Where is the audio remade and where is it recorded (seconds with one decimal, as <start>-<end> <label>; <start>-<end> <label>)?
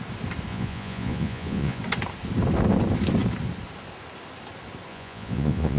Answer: 0.0-0.5 recorded; 0.5-1.8 remade; 1.8-4.9 recorded; 4.9-5.8 remade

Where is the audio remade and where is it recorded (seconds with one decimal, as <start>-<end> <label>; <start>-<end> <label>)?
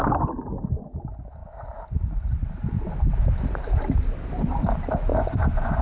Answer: 0.0-5.1 recorded; 5.1-5.8 remade